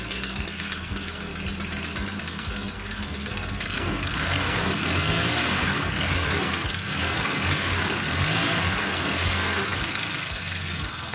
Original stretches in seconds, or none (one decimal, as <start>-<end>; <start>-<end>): 1.3-2.2